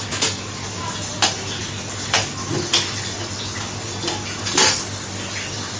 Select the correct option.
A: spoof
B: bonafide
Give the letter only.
B